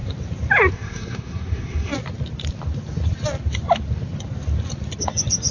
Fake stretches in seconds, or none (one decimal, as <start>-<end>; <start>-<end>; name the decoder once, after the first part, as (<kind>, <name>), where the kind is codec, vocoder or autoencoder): 0.7-1.9 (codec, SNAC)